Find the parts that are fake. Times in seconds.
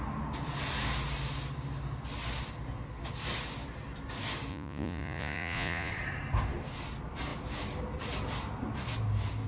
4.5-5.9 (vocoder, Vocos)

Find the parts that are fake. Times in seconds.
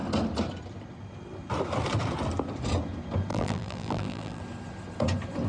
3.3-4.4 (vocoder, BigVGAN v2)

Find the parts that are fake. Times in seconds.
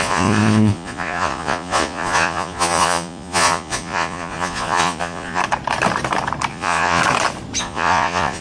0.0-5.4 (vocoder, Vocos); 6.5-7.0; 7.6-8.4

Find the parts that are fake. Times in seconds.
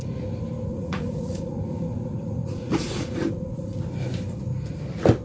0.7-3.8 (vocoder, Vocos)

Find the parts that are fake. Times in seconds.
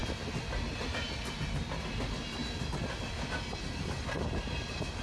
none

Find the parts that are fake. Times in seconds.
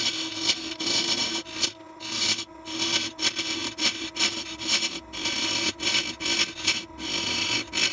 none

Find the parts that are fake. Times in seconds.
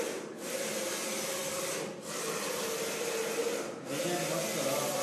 none